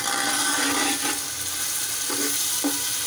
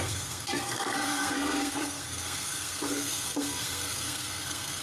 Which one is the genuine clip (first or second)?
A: first